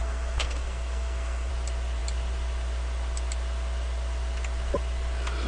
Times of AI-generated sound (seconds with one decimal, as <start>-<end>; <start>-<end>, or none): 0.0-1.5

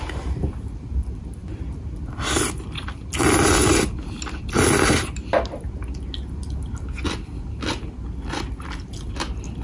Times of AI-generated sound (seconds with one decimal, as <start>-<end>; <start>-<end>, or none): none